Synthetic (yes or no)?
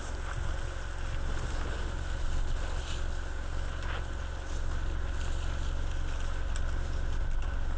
no